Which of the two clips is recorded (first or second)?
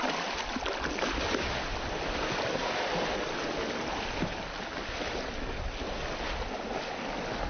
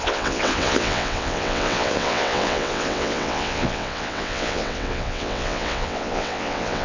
first